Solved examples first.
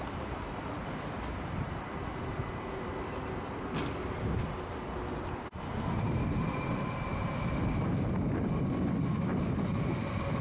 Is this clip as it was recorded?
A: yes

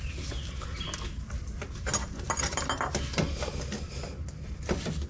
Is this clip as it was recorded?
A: yes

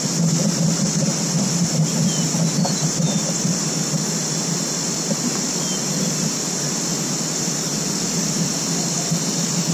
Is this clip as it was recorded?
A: yes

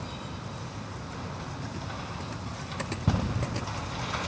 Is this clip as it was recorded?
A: yes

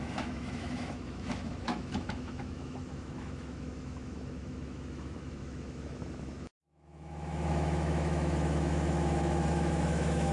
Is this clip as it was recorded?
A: no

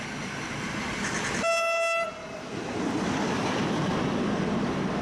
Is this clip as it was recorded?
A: yes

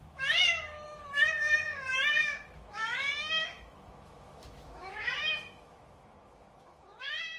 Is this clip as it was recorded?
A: no